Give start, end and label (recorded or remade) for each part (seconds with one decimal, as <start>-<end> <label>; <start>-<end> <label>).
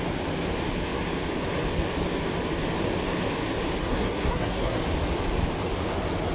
0.0-3.8 recorded; 3.8-4.8 remade; 4.8-6.3 recorded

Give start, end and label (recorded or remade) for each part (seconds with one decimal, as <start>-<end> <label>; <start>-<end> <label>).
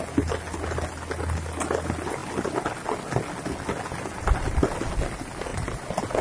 0.0-6.2 recorded